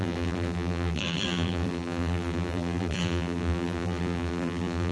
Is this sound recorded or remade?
remade